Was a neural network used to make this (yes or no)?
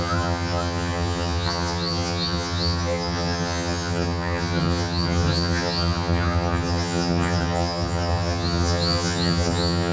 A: yes